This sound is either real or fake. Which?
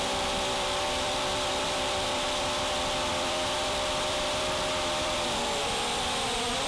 fake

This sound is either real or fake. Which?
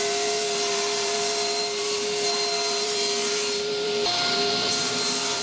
fake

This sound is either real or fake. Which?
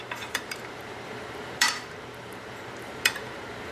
fake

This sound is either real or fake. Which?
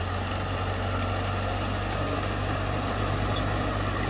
real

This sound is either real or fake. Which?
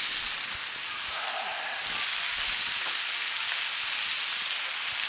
real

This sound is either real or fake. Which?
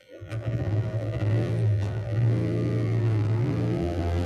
fake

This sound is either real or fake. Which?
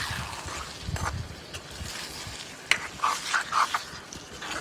real